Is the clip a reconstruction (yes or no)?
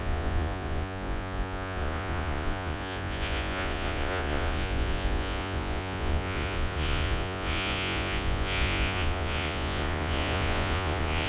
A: yes